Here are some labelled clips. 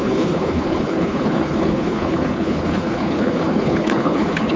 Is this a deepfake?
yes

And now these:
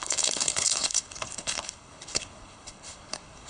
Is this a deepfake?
yes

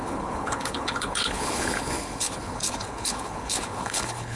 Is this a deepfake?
yes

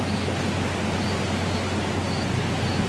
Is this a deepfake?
no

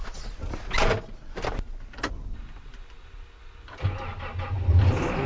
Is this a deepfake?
no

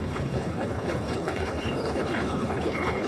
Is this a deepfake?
yes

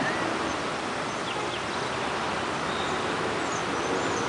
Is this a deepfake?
no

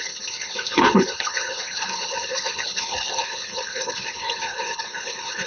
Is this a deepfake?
yes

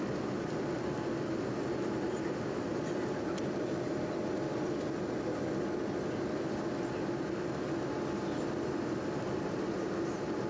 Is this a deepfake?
no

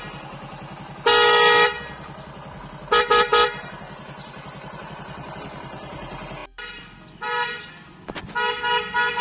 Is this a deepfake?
no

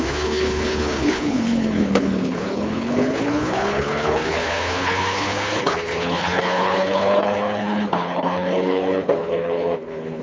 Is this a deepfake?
yes